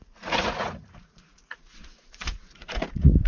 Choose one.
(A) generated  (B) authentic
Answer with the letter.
A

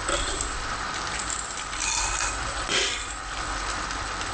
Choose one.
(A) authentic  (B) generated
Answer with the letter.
A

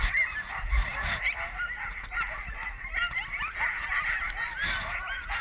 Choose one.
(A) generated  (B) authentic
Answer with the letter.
B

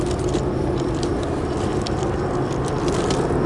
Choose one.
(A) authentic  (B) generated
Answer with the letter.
A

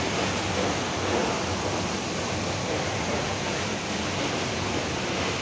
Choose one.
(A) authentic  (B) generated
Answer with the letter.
A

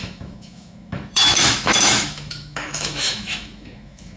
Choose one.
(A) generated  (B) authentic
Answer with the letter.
A